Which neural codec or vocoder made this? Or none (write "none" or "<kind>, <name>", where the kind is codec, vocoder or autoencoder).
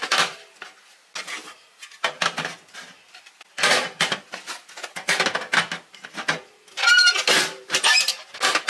none